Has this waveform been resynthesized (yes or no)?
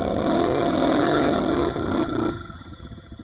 yes